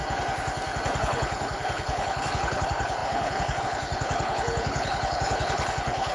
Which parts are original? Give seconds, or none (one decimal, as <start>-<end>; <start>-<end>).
0.0-1.0